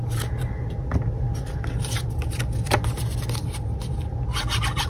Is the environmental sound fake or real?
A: real